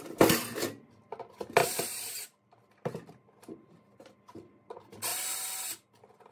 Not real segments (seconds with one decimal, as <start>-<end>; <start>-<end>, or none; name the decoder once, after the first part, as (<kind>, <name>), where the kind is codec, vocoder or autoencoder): 1.6-2.9 (vocoder, BigVGAN v2); 5.1-6.3